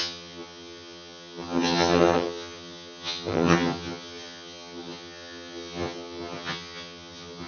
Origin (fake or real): fake